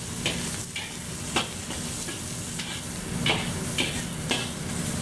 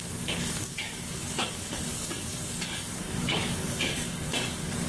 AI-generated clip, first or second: second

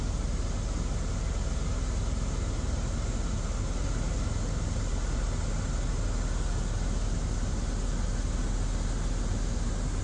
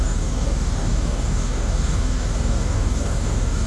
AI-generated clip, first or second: second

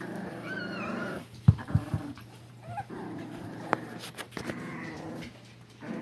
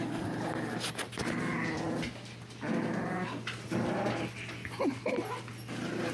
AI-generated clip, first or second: first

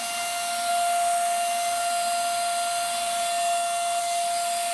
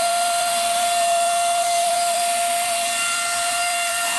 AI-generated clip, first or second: second